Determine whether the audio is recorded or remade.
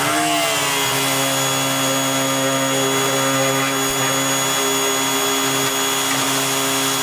recorded